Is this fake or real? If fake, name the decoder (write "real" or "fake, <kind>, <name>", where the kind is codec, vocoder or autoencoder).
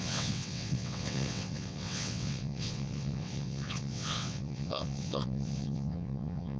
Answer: fake, vocoder, WaveNeXt